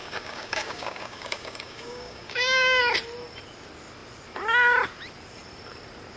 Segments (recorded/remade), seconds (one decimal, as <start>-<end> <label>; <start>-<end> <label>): 0.0-2.8 remade; 2.8-6.2 recorded